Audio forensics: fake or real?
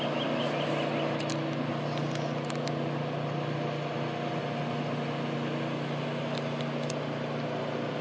real